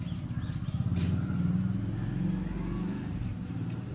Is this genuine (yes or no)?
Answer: yes